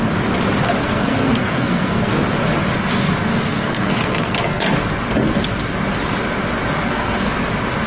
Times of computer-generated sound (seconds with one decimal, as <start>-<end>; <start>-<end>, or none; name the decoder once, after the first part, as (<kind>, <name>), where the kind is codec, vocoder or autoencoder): 0.8-2.1 (codec, SNAC); 3.3-4.7; 6.8-7.4